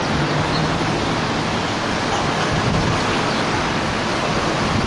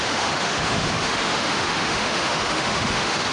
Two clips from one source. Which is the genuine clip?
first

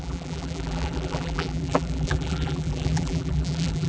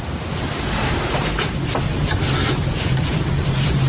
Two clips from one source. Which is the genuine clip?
second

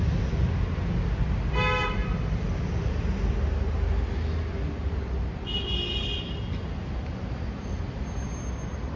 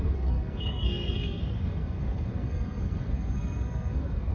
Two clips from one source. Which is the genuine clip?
first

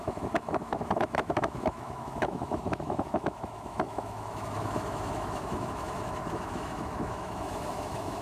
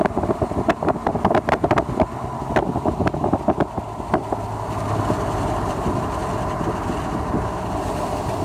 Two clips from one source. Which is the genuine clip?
second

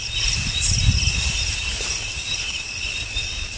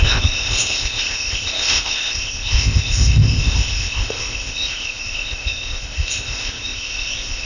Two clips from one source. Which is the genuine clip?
first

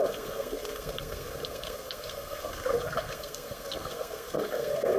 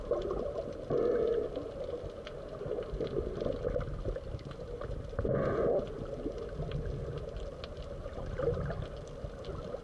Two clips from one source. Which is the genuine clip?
second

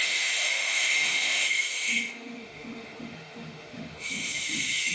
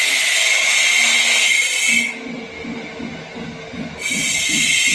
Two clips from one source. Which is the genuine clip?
second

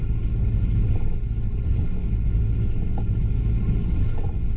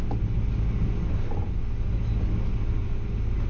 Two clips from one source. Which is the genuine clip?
second